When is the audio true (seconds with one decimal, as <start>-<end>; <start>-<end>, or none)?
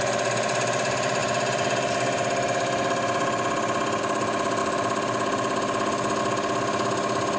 0.0-7.4